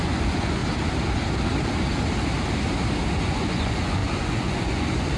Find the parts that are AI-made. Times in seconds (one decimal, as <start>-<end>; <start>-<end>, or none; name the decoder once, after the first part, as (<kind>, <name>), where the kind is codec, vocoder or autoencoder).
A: 0.0-0.6 (vocoder, Vocos); 3.2-5.2